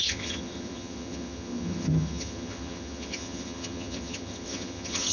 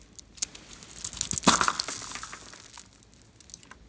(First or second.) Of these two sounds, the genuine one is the second